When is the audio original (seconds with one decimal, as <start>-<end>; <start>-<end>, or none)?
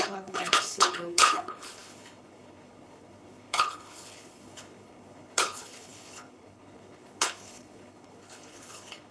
none